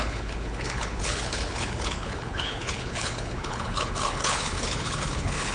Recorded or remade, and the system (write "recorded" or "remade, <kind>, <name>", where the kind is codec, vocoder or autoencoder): remade, codec, HILCodec